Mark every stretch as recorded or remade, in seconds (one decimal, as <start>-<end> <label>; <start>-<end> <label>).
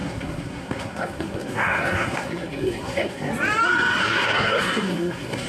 0.0-3.3 remade; 3.3-4.0 recorded; 4.0-5.5 remade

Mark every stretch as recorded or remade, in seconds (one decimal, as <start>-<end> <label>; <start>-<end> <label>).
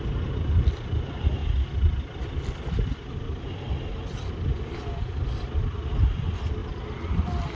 0.0-7.5 recorded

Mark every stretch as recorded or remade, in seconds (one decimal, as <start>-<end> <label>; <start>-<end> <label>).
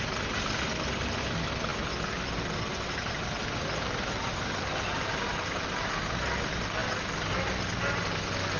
0.0-2.7 recorded; 2.7-5.7 remade; 5.7-8.6 recorded